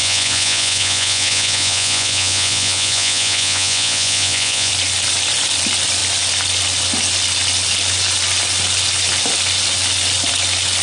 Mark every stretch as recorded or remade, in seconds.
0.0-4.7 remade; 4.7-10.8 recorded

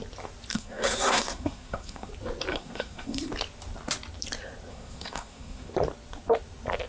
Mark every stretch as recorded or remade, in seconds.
0.0-0.5 recorded; 0.5-2.1 remade; 2.1-2.5 recorded; 2.5-3.3 remade; 3.3-4.7 recorded; 4.7-5.7 remade; 5.7-6.9 recorded

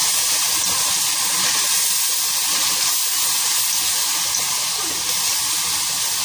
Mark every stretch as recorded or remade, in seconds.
0.0-0.5 remade; 0.5-6.2 recorded